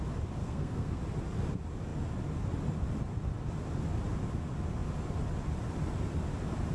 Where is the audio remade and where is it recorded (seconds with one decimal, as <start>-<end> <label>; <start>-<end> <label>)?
0.0-0.4 recorded; 0.4-1.0 remade; 1.0-6.7 recorded